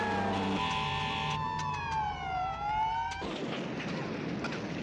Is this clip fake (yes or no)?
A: no